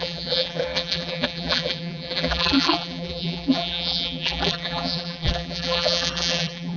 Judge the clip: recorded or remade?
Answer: remade